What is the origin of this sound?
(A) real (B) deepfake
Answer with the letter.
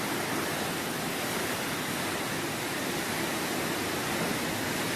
A